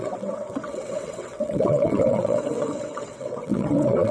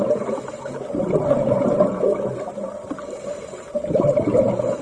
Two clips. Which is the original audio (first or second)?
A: second